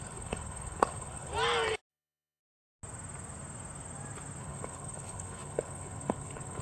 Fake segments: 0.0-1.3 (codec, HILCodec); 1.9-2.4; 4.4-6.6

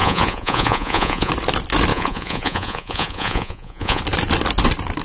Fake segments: 0.0-1.3 (vocoder, Vocos); 1.9-4.0

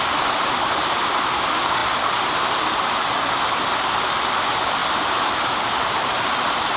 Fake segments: none

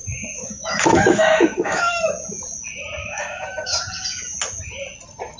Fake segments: 0.0-2.0 (autoencoder, DAC-VAE); 3.0-3.8